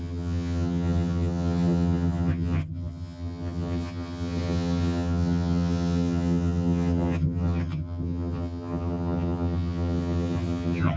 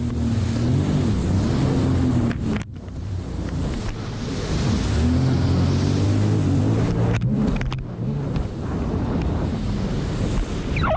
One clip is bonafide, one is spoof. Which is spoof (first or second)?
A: first